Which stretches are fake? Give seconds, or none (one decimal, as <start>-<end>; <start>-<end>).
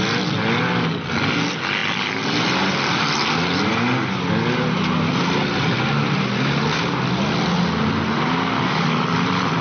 none